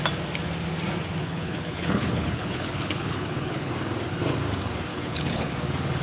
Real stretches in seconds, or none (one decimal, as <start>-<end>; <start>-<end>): 0.0-1.2; 3.7-4.9; 5.5-6.0